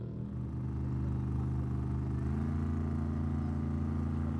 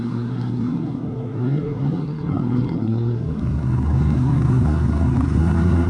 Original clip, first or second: first